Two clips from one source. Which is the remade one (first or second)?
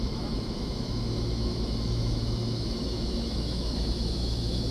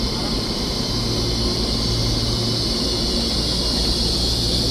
first